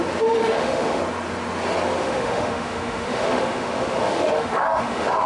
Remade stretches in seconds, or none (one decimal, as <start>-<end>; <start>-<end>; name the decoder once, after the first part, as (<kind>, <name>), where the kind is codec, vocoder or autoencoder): 0.4-1.0 (autoencoder, DAC-VAE); 2.0-5.3